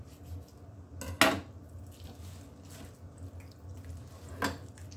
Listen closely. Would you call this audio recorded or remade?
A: recorded